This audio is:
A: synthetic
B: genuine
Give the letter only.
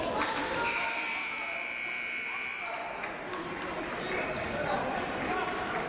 A